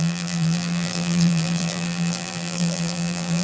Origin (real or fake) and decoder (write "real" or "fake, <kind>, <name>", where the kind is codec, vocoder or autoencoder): fake, vocoder, BigVGAN v2